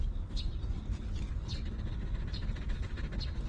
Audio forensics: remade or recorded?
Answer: recorded